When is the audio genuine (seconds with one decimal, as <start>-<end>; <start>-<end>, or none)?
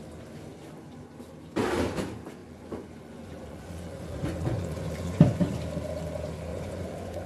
0.0-2.4; 5.5-6.5